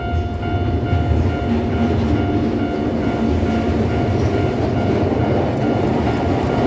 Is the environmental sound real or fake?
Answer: real